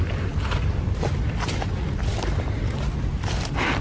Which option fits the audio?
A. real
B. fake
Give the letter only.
A